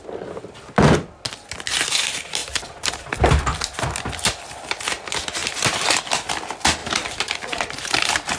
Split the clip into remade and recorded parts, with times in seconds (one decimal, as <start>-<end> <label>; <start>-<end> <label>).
0.0-2.4 recorded; 2.4-3.3 remade; 3.3-5.4 recorded; 5.4-6.0 remade; 6.0-6.8 recorded; 6.8-8.4 remade